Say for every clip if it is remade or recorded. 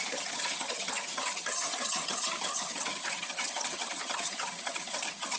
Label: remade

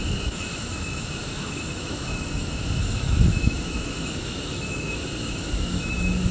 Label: remade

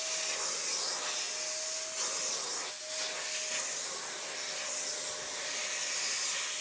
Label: recorded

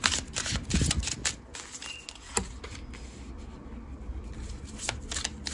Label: recorded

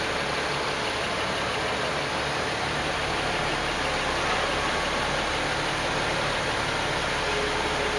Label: recorded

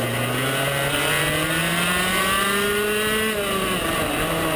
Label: recorded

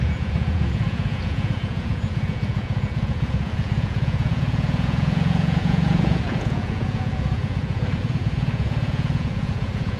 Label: remade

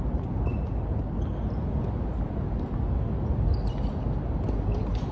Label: recorded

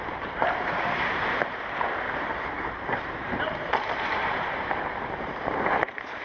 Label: remade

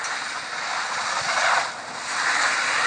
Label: recorded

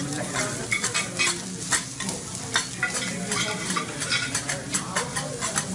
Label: recorded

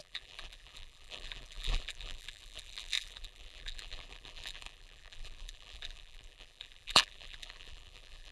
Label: remade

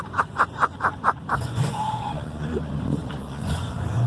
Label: remade